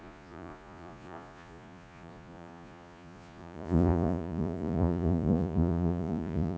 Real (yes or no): no